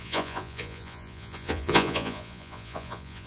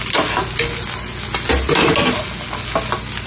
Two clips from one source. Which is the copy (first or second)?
first